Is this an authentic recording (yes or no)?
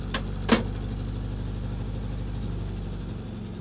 yes